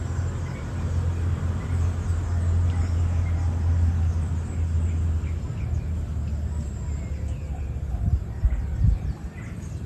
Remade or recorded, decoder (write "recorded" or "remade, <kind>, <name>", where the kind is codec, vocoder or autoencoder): recorded